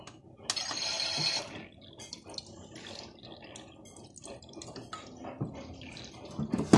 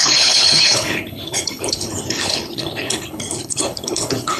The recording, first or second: first